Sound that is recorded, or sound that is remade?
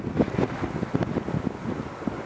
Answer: recorded